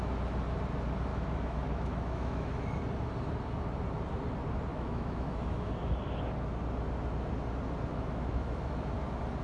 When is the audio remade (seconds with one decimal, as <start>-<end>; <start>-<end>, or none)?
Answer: 1.1-2.7; 4.7-5.7; 7.9-8.9